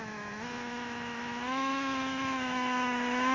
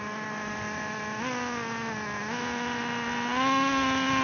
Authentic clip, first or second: second